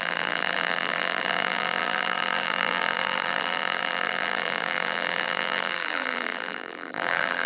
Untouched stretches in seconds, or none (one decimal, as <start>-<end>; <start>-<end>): none